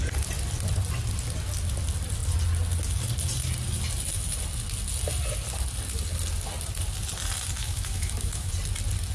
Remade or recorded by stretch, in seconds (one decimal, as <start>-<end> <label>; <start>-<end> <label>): 0.0-7.6 recorded; 7.6-8.5 remade; 8.5-9.1 recorded